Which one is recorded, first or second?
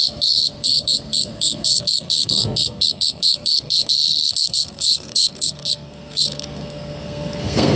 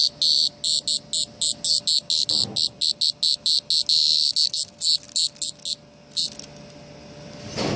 second